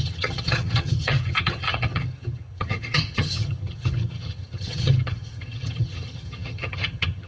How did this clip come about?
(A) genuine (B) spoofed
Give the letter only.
B